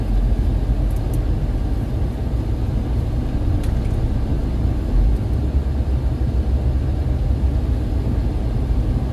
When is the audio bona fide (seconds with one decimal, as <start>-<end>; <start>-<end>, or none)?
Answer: 0.0-9.1